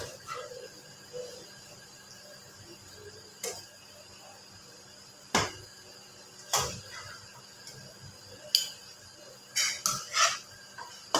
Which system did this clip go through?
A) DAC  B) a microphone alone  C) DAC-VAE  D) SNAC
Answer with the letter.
B